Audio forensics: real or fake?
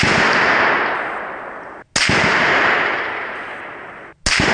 real